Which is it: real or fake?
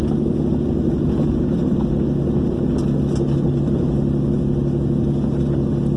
real